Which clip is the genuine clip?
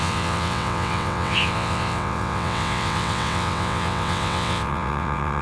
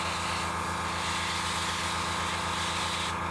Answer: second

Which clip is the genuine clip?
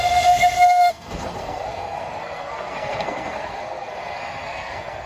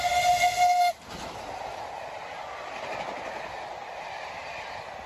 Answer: second